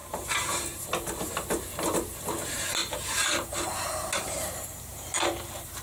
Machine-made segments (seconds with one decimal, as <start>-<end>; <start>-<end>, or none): 0.0-0.6; 2.8-5.8